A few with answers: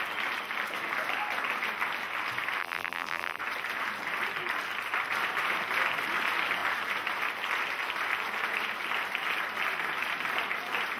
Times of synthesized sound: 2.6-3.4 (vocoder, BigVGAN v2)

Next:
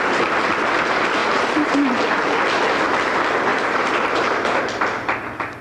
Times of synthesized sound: 1.2-1.9 (vocoder, BigVGAN v2); 3.5-4.6

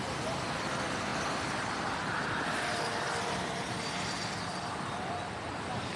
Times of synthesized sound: 1.1-4.7 (vocoder, BigVGAN v2)

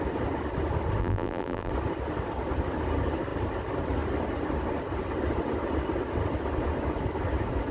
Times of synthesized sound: 1.0-1.7 (vocoder, BigVGAN v2)

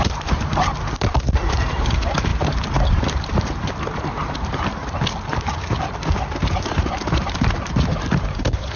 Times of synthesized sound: 0.0-4.8 (vocoder, BigVGAN v2); 6.5-8.8

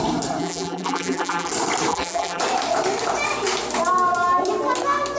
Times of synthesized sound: 0.4-1.5 (vocoder, BigVGAN v2); 1.9-2.4